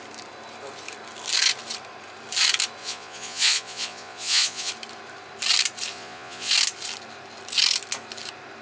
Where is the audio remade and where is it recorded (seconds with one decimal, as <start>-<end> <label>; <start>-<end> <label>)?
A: 0.0-2.8 recorded; 2.8-4.7 remade; 4.7-5.9 recorded; 5.9-6.5 remade; 6.5-8.6 recorded